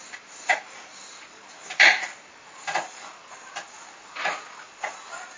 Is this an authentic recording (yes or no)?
yes